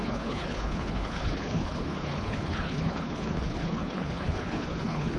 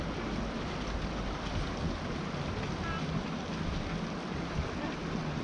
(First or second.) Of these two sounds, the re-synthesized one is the first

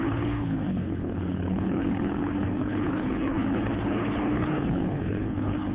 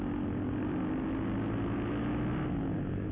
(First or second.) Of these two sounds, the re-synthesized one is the first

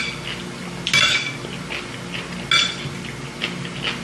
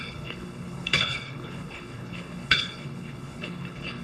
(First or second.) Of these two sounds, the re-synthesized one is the second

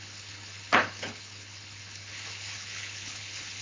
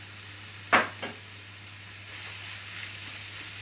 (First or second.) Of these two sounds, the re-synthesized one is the first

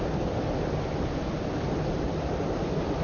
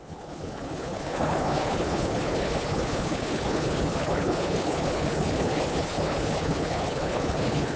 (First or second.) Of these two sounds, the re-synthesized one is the second